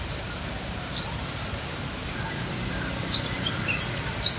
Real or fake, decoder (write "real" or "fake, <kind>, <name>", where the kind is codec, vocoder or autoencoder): real